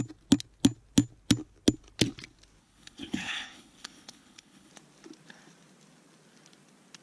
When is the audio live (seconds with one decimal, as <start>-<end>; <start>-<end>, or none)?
0.0-2.6; 4.7-7.0